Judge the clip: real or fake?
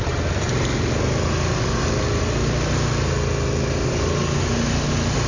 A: real